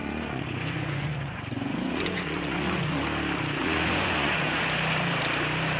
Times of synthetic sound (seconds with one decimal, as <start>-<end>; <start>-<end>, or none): 0.0-3.0; 3.6-4.6